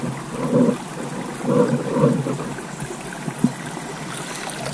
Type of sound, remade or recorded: recorded